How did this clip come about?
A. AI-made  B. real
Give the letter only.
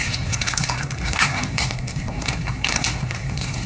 A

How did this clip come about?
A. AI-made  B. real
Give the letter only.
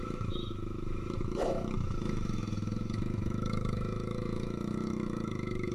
A